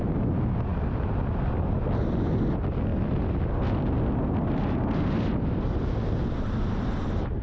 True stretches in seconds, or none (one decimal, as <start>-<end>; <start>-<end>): 0.0-7.4